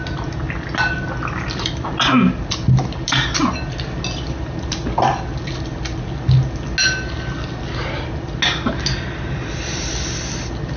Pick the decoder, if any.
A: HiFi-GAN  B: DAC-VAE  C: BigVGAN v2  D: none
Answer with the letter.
D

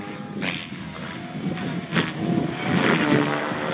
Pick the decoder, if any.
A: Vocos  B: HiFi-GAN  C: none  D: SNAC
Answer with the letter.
C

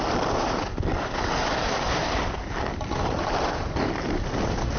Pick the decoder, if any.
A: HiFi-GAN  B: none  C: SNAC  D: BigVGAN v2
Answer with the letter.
B